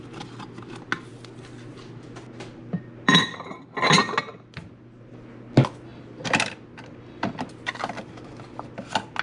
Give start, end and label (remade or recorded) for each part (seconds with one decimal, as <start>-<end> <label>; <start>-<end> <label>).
0.0-9.2 recorded